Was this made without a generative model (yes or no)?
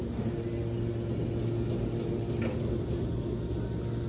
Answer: yes